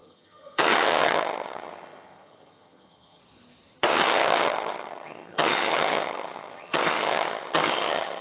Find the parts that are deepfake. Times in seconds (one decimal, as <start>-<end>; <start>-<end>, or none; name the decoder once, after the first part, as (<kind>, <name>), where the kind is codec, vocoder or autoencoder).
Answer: 0.0-3.2 (vocoder, HiFi-GAN); 3.9-8.2